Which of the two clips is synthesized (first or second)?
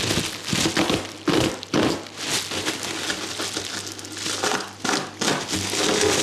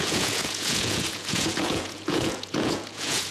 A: second